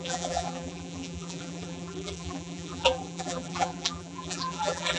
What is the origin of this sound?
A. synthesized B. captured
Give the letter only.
A